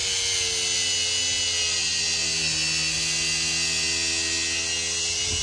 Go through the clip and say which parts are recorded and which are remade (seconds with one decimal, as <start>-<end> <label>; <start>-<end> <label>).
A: 0.0-5.4 recorded